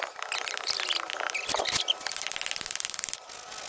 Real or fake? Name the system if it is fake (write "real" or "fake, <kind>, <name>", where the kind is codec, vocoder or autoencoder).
real